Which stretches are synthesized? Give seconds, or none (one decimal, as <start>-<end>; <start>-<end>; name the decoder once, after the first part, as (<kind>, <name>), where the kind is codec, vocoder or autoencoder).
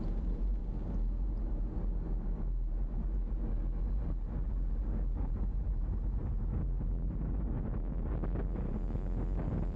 0.0-0.6 (vocoder, BigVGAN v2); 5.2-9.8